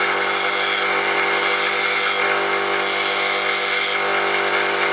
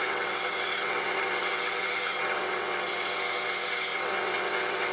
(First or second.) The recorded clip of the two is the first